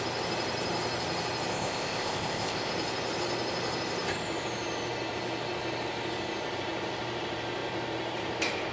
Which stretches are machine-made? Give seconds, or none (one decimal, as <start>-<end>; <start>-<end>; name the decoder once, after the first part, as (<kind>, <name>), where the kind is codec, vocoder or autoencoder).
1.5-2.7 (codec, ZipCodec)